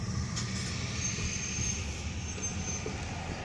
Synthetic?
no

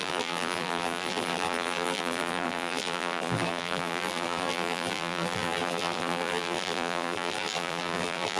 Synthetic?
yes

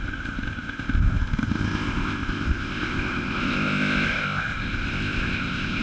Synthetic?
yes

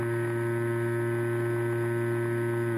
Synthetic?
no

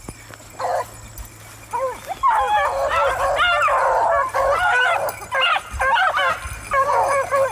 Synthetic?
no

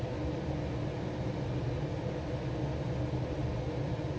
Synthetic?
no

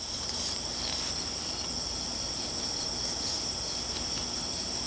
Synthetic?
yes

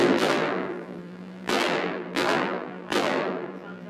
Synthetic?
yes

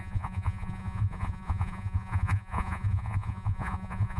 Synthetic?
yes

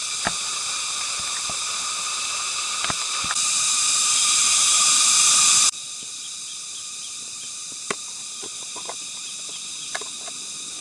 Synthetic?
yes